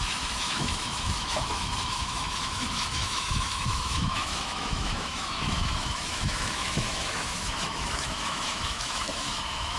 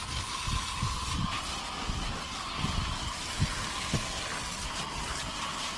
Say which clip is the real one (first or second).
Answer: second